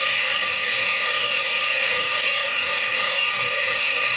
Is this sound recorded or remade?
remade